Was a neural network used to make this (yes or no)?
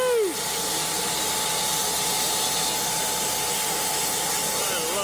no